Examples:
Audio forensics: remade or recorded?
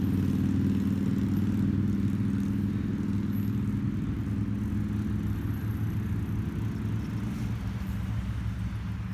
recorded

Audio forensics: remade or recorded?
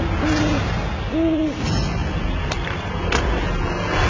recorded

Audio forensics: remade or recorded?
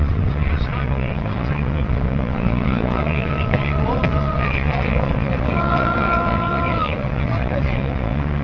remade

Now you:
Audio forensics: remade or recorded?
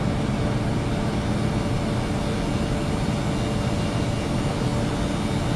recorded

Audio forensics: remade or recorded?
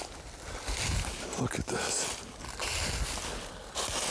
recorded